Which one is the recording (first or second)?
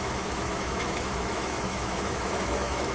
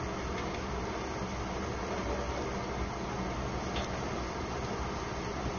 second